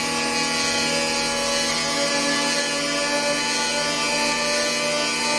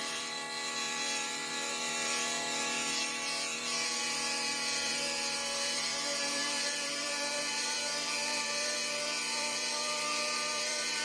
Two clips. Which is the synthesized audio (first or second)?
second